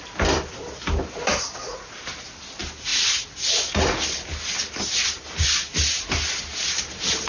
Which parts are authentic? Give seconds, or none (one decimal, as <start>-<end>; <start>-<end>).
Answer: 0.0-7.3